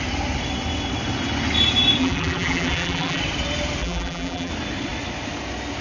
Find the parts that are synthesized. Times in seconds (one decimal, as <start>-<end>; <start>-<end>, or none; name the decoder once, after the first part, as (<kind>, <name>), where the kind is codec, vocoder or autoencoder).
2.0-3.2 (vocoder, BigVGAN v2); 3.8-4.5